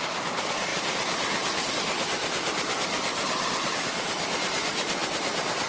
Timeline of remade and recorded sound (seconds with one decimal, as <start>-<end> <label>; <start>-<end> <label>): 0.0-3.1 recorded; 3.1-3.8 remade; 3.8-5.7 recorded